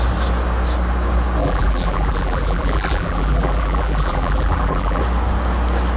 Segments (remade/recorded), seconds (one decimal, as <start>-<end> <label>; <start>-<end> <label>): 0.0-1.4 recorded; 1.4-5.0 remade; 5.0-6.0 recorded